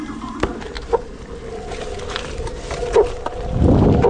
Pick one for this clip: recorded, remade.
recorded